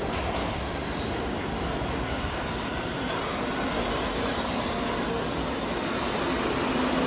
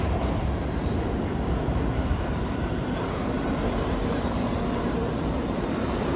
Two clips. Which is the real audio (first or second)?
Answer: first